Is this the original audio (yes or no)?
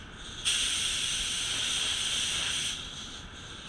yes